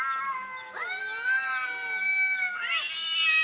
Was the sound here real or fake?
real